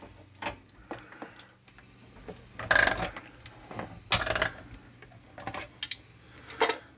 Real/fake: real